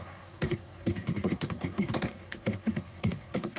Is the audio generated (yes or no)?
yes